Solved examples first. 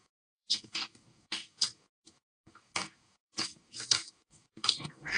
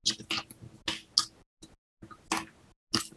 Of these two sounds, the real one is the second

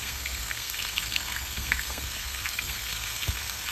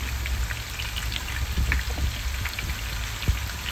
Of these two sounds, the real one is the second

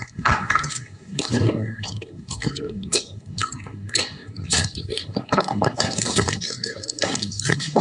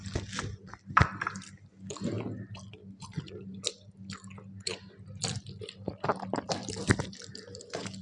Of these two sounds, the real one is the second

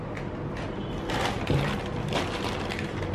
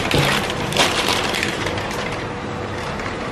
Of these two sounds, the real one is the first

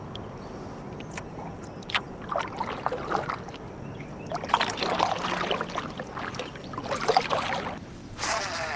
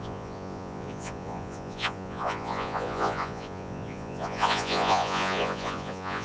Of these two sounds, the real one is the first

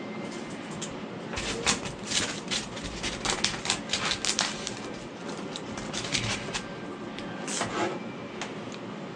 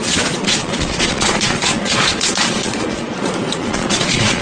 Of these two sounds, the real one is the first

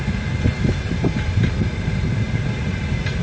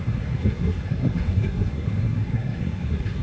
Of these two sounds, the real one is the first